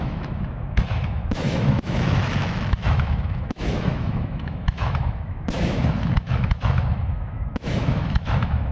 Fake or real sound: fake